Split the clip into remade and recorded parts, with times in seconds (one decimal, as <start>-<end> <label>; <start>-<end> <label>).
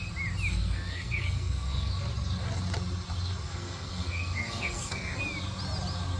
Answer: 0.0-0.5 recorded; 0.5-1.9 remade; 1.9-3.5 recorded; 3.5-5.2 remade; 5.2-6.2 recorded